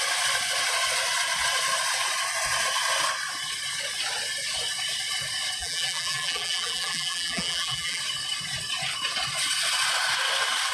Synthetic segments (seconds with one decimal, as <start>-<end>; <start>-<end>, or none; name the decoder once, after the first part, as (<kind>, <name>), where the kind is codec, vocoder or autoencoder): 5.6-8.0 (vocoder, BigVGAN v2)